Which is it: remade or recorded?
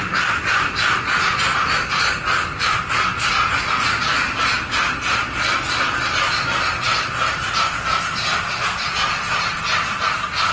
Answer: recorded